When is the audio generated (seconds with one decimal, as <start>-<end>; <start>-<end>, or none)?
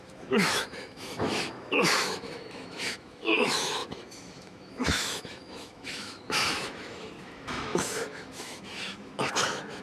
0.0-9.8